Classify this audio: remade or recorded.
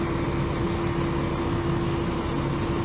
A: recorded